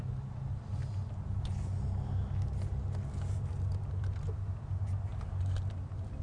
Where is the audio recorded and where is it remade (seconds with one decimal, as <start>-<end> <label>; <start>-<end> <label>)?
0.0-0.8 remade; 0.8-3.3 recorded; 3.3-5.1 remade; 5.1-5.7 recorded; 5.7-6.2 remade